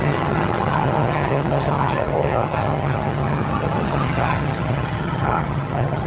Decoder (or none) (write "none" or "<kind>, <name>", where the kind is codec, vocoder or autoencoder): vocoder, HiFi-GAN